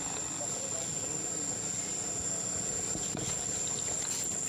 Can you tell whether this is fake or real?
real